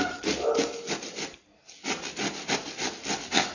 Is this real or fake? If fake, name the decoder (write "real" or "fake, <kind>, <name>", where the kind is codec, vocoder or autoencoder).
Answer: real